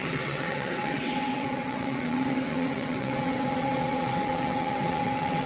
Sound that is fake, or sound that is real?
fake